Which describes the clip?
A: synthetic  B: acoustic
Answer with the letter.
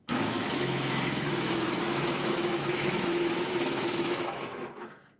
A